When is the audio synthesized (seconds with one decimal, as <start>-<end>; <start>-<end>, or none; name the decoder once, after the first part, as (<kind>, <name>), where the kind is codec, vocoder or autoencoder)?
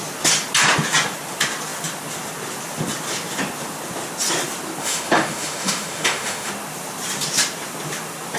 4.8-6.5 (autoencoder, DAC-VAE)